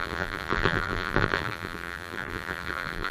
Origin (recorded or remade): remade